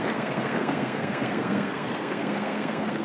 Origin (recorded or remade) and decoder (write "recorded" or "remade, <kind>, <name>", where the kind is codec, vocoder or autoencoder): remade, codec, SNAC